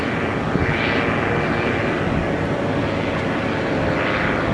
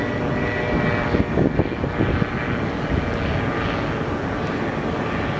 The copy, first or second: first